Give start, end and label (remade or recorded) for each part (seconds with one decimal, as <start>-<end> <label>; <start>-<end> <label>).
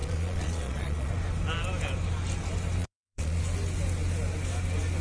0.0-1.1 remade; 1.1-2.8 recorded; 2.8-3.4 remade; 3.4-5.0 recorded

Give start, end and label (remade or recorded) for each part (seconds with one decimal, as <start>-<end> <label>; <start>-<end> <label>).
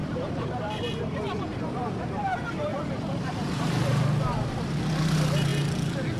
0.0-1.0 remade; 1.0-1.5 recorded; 1.5-4.8 remade; 4.8-6.2 recorded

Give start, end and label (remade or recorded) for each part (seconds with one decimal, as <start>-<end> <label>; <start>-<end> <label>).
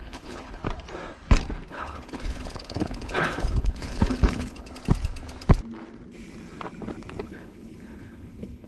0.0-0.6 remade; 0.6-1.7 recorded; 1.7-4.7 remade; 4.7-7.2 recorded; 7.2-8.7 remade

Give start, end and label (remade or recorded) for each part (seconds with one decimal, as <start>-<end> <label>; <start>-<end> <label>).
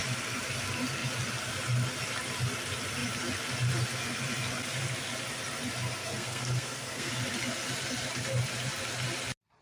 0.0-6.0 recorded; 6.0-7.1 remade; 7.1-9.6 recorded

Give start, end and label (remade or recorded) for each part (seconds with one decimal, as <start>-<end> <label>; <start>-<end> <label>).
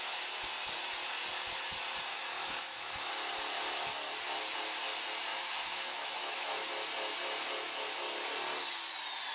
0.0-2.1 recorded; 2.1-3.1 remade; 3.1-5.3 recorded; 5.3-6.7 remade; 6.7-9.3 recorded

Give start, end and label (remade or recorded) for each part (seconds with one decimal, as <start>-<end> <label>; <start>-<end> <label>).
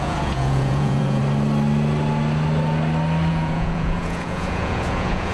0.0-1.2 remade; 1.2-3.3 recorded; 3.3-5.3 remade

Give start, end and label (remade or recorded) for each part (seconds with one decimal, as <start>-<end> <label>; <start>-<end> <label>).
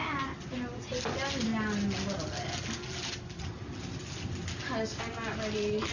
0.0-5.9 recorded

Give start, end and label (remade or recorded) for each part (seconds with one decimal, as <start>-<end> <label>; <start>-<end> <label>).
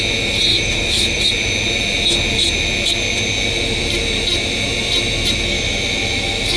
0.0-0.5 recorded; 0.5-1.2 remade; 1.2-6.6 recorded